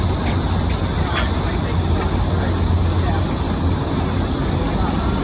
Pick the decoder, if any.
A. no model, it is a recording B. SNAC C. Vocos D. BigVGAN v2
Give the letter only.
A